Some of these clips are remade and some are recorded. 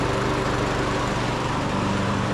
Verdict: remade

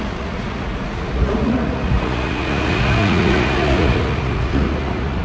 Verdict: remade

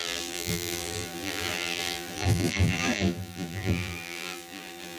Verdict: remade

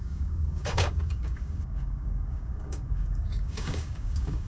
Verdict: remade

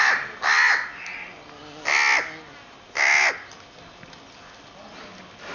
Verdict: recorded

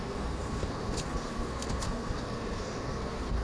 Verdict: remade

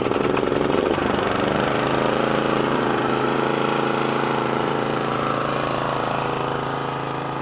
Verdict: remade